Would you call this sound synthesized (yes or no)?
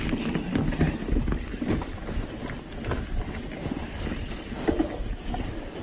no